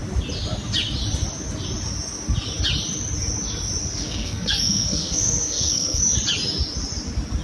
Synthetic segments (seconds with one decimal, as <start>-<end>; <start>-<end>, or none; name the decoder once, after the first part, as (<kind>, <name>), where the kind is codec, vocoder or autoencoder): 3.8-6.0 (codec, SNAC)